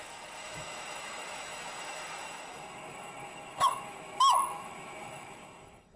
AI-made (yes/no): yes